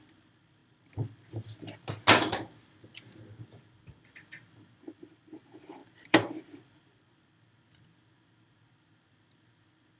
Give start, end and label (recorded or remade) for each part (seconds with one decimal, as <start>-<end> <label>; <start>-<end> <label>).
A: 0.0-5.8 recorded; 5.8-7.0 remade; 7.0-10.0 recorded